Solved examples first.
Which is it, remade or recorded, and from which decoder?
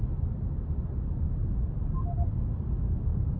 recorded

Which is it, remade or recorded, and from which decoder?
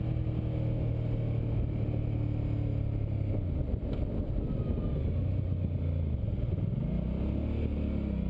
recorded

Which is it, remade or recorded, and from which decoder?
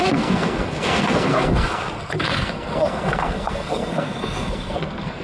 remade, codec, SNAC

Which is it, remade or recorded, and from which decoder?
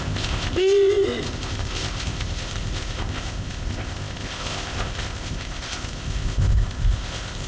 remade, codec, ZipCodec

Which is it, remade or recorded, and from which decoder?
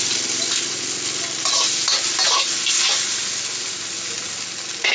recorded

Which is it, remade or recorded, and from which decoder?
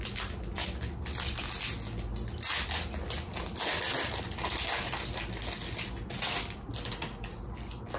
recorded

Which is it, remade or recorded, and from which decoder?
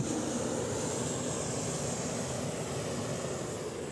recorded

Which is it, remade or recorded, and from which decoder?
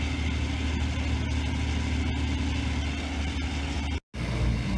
recorded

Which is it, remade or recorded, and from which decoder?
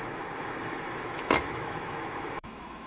remade, autoencoder, DAC-VAE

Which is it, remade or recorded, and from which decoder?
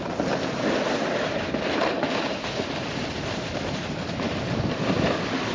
recorded